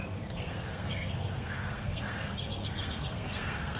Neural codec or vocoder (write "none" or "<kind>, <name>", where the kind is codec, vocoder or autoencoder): codec, SNAC